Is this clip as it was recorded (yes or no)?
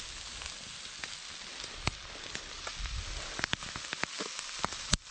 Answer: yes